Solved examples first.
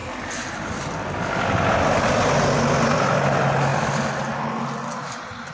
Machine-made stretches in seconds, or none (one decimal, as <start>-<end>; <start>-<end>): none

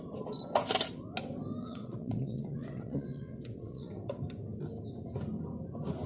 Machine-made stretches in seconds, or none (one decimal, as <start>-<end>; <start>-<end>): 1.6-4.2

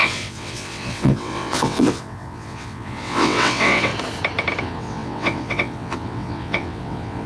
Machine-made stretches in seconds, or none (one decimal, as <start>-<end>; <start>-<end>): 0.0-3.9; 4.6-7.3

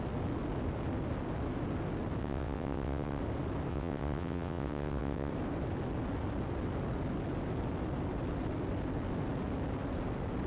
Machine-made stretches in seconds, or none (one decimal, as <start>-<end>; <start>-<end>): 2.2-3.2; 3.7-5.3

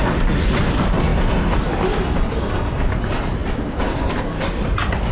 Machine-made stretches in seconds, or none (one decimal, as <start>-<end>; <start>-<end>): none